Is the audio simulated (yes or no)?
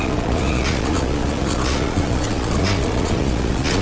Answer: yes